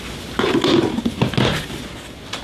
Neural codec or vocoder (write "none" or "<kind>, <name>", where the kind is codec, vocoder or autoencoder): none